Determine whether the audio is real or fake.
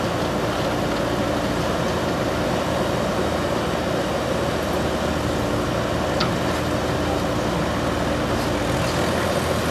real